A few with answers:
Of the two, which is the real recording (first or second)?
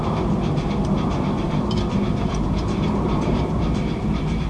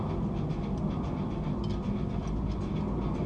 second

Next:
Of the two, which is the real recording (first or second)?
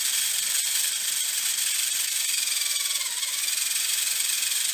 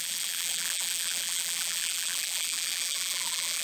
first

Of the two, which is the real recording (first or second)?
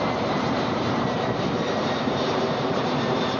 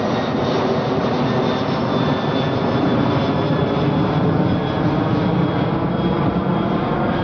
second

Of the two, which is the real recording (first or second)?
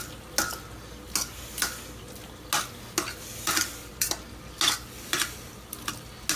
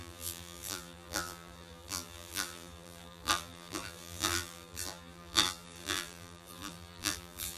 first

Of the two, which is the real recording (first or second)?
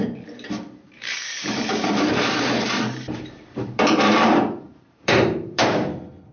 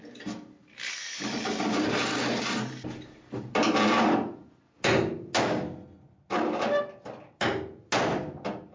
second